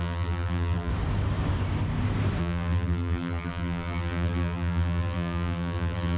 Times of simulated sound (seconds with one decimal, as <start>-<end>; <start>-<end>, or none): 0.0-0.9; 2.4-6.2